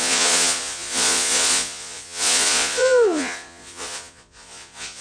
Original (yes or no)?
no